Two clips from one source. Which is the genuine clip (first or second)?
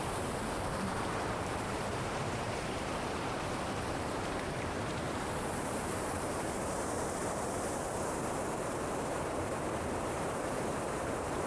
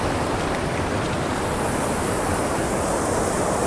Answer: second